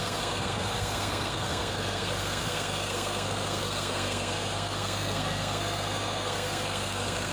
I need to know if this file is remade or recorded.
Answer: remade